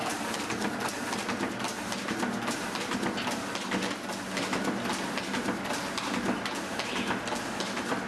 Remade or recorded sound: recorded